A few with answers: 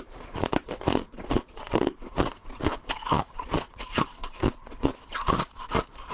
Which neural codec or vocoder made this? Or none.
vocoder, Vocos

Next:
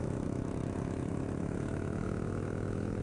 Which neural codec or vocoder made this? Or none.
autoencoder, DAC-VAE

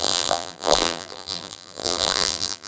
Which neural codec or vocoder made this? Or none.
vocoder, BigVGAN v2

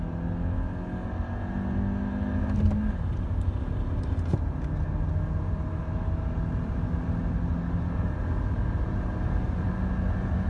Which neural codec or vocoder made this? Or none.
none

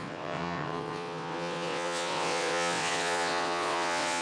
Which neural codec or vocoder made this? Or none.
vocoder, WaveNeXt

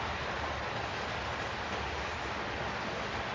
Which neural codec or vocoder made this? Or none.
none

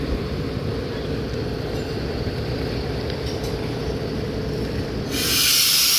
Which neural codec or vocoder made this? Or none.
vocoder, BigVGAN v2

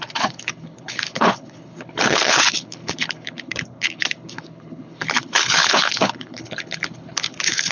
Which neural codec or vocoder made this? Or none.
codec, HILCodec